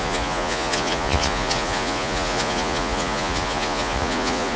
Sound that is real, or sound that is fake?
fake